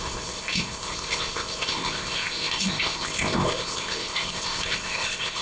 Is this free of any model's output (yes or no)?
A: no